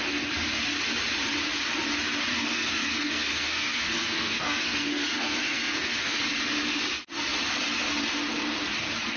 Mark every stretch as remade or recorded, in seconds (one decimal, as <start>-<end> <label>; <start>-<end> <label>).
0.0-2.3 recorded; 2.3-6.2 remade; 6.2-9.2 recorded